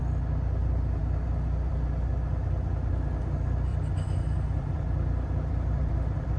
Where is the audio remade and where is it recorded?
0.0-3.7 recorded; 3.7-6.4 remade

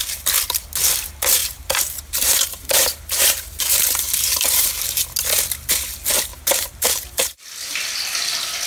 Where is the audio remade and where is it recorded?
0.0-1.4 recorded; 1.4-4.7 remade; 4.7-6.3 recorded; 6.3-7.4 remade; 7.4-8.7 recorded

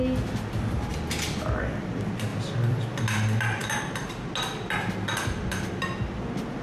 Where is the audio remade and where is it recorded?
0.0-2.3 recorded; 2.3-2.8 remade; 2.8-6.6 recorded

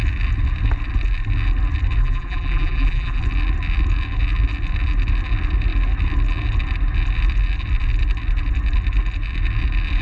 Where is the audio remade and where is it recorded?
0.0-2.0 recorded; 2.0-3.2 remade; 3.2-10.0 recorded